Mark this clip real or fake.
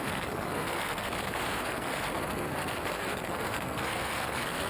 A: fake